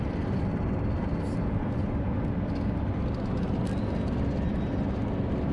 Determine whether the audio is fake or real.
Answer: real